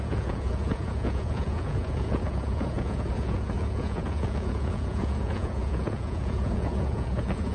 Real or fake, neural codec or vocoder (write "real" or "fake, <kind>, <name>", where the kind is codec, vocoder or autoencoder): fake, vocoder, Vocos